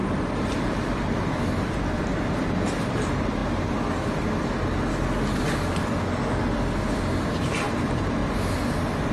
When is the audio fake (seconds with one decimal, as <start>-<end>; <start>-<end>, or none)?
0.0-3.4; 7.4-8.2